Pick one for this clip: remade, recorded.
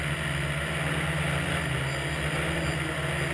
recorded